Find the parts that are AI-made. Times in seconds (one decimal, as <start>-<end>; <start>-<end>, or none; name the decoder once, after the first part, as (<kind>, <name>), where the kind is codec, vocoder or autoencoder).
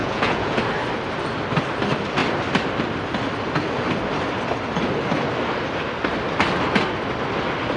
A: 0.0-0.6 (vocoder, Vocos)